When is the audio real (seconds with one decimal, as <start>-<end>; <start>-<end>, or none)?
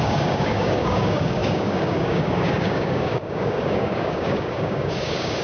none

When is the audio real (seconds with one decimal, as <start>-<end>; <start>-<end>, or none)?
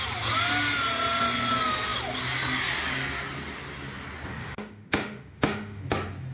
0.0-4.4; 5.8-6.3